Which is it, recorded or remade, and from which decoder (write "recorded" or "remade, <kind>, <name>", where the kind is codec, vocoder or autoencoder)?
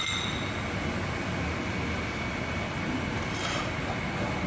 recorded